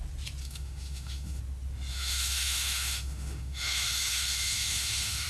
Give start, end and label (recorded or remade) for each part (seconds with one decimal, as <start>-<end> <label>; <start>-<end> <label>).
0.0-0.4 recorded; 0.4-1.4 remade; 1.4-1.9 recorded; 1.9-5.3 remade

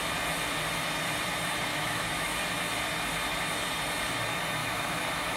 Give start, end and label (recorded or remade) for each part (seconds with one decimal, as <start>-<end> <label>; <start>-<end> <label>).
0.0-1.7 recorded; 1.7-2.4 remade; 2.4-4.6 recorded; 4.6-5.4 remade

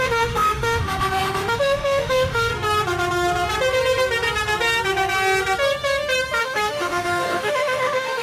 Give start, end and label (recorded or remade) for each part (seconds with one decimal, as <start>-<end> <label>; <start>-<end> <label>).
0.0-2.5 remade; 2.5-6.4 recorded; 6.4-8.2 remade

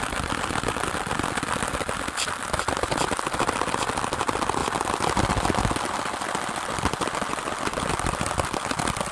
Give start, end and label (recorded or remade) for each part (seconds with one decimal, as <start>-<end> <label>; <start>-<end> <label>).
0.0-9.1 recorded

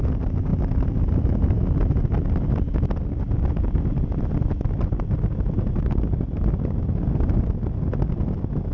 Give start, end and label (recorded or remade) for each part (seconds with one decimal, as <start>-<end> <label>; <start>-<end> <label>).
0.0-8.7 recorded

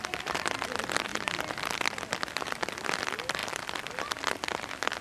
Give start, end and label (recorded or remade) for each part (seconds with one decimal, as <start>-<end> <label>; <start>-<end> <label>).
0.0-5.0 recorded